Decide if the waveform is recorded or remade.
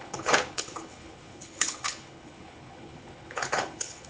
remade